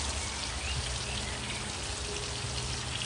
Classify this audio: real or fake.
real